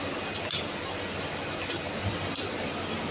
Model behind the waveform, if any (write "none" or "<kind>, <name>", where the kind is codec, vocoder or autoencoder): none